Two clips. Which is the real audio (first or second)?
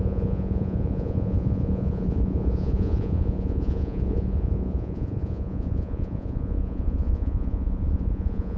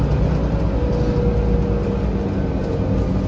second